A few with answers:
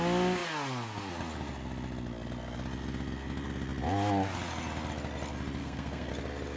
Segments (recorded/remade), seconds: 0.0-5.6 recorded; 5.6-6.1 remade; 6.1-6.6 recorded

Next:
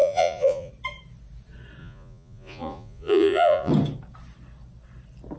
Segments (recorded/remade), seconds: 0.0-0.7 remade; 0.7-1.8 recorded; 1.8-3.7 remade; 3.7-5.4 recorded

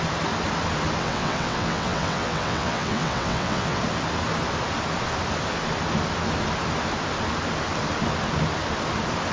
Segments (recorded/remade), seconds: 0.0-1.0 recorded; 1.0-3.8 remade; 3.8-9.3 recorded

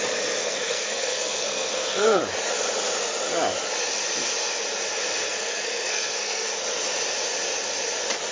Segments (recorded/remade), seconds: 0.0-0.4 recorded; 0.4-2.2 remade; 2.2-5.2 recorded; 5.2-6.5 remade; 6.5-8.3 recorded

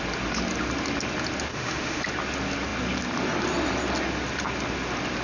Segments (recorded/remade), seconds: 0.0-1.5 recorded; 1.5-2.0 remade; 2.0-5.2 recorded

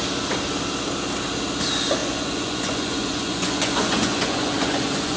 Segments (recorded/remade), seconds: 0.0-2.0 recorded; 2.0-5.2 remade

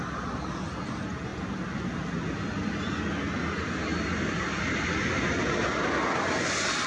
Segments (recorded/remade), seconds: 0.0-6.9 recorded